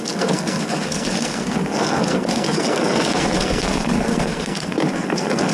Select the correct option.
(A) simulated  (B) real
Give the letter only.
A